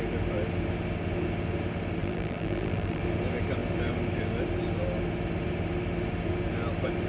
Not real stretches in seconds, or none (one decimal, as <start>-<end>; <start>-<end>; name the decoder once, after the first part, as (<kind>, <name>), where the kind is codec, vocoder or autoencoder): 2.0-3.0 (vocoder, BigVGAN v2)